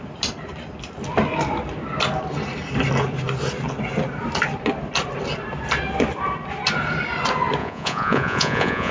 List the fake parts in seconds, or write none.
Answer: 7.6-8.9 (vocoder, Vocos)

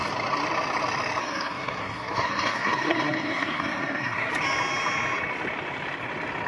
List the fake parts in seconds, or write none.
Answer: 1.2-4.3 (codec, SNAC)

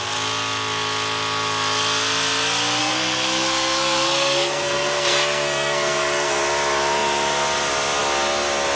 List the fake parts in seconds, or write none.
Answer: 2.8-6.4 (codec, SNAC)

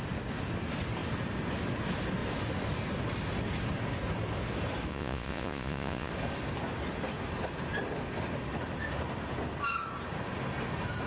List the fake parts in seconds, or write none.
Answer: 4.9-6.1 (vocoder, Vocos)